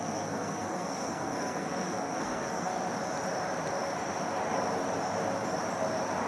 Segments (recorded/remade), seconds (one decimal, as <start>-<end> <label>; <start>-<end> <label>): 0.0-2.7 remade; 2.7-6.3 recorded